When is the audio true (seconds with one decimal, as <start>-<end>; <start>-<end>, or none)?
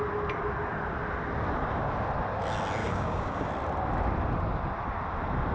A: 0.0-2.8; 3.5-5.5